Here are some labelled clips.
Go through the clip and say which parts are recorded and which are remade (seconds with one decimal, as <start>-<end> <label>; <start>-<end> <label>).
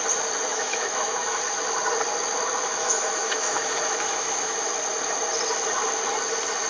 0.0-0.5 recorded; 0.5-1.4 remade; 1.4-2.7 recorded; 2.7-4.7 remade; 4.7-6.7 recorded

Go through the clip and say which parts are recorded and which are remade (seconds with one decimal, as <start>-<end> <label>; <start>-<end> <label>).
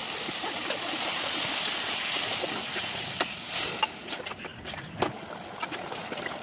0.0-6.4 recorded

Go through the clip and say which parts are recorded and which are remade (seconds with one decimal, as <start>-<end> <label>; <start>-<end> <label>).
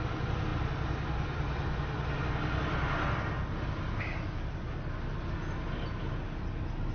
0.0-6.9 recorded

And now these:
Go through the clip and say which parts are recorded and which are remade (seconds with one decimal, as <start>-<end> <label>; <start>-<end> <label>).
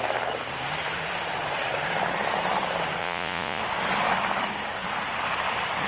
0.0-3.0 recorded; 3.0-3.6 remade; 3.6-5.9 recorded